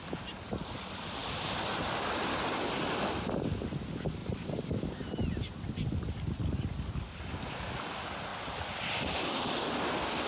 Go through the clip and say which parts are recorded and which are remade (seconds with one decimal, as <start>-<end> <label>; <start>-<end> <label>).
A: 0.0-8.3 recorded; 8.3-9.4 remade; 9.4-10.3 recorded